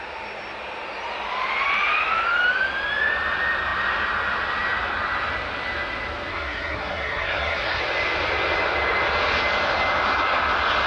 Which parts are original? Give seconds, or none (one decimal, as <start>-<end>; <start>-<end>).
0.0-6.3; 7.8-10.9

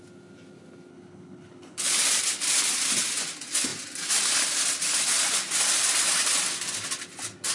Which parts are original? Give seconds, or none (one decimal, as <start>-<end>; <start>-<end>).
0.0-0.9; 1.9-7.5

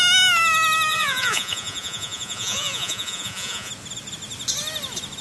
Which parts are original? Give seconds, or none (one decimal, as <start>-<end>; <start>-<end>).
0.0-0.9; 3.7-5.2

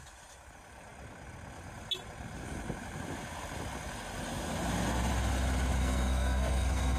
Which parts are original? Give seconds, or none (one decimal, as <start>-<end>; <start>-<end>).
0.0-5.8

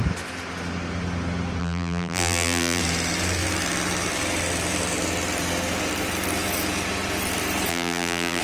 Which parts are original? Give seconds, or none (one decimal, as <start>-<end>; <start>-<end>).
0.0-1.6; 2.8-7.7

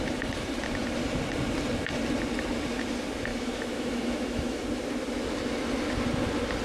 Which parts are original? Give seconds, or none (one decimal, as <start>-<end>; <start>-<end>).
0.0-3.3; 4.6-6.6